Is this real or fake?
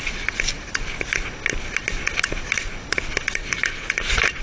real